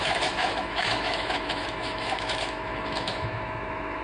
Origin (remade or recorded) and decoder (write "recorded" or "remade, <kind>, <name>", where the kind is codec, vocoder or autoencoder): remade, autoencoder, DAC-VAE